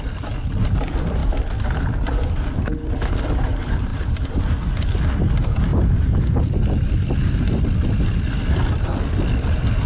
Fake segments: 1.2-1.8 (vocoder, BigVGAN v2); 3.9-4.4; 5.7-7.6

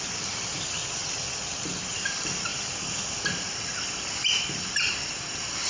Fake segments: 2.5-5.7 (vocoder, BigVGAN v2)

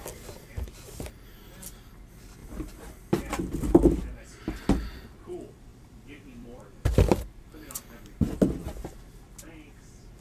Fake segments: 2.4-4.0 (vocoder, BigVGAN v2); 5.7-8.0

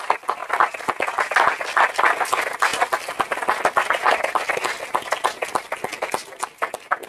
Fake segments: none

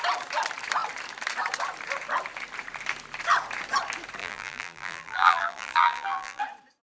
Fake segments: 4.2-6.4 (vocoder, BigVGAN v2)

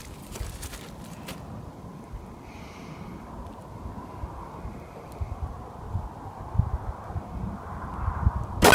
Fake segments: none

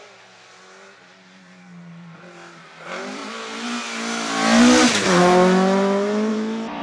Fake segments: 0.0-3.2 (vocoder, BigVGAN v2); 6.3-6.8

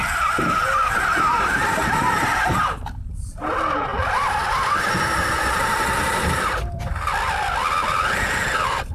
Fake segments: none